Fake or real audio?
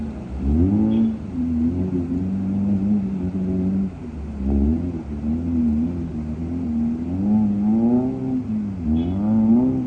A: real